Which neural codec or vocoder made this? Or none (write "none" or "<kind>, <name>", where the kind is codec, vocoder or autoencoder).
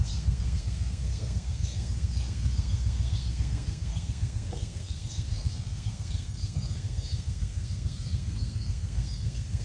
codec, SNAC